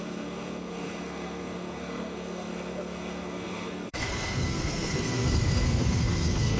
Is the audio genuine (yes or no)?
no